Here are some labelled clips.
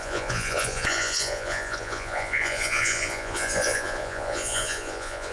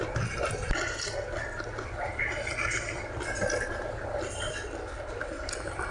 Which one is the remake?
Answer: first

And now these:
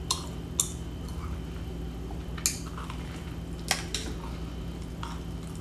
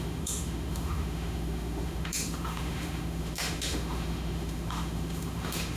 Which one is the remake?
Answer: second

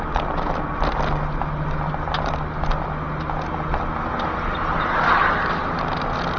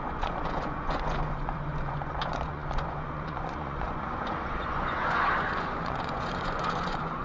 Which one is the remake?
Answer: second